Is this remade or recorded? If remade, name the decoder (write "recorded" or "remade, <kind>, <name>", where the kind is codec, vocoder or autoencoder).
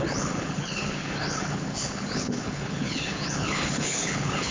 remade, codec, HILCodec